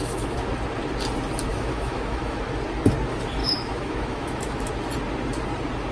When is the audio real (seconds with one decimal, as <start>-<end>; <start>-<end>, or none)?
0.5-1.5; 2.4-3.4; 4.7-5.9